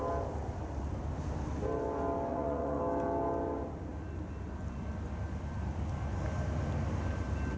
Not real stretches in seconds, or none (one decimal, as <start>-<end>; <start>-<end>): 2.3-2.8